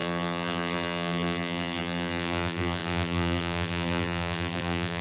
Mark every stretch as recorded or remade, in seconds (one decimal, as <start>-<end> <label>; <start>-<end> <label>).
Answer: 0.0-5.0 remade